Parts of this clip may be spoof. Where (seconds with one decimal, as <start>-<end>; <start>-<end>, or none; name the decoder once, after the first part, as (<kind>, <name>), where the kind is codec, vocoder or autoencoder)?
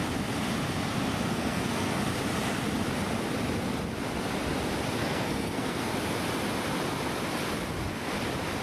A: 1.3-2.0 (codec, SNAC); 5.0-5.9